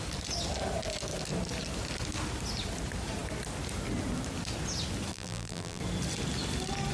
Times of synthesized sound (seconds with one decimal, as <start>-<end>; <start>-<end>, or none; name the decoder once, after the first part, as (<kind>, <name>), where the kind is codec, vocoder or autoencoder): 5.1-5.8 (vocoder, BigVGAN v2)